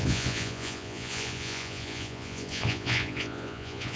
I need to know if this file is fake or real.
fake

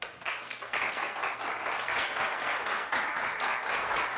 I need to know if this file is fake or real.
fake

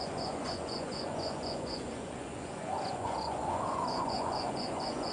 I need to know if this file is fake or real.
fake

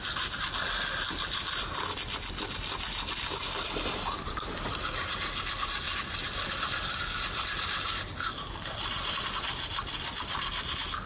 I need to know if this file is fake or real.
real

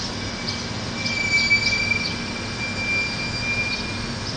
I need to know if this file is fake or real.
real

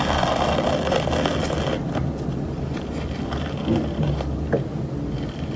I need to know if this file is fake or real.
real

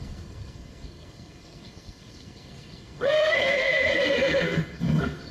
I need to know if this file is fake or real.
fake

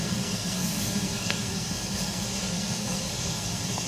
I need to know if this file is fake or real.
fake